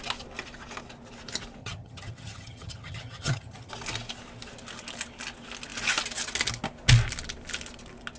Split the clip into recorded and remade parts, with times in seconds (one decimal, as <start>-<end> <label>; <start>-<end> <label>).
0.0-1.6 recorded; 1.6-3.7 remade; 3.7-8.2 recorded